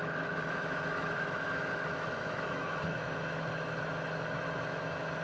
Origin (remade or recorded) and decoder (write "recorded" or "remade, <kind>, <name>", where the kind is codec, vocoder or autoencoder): remade, autoencoder, DAC-VAE